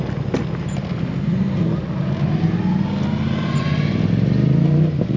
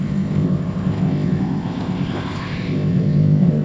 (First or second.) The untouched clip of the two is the first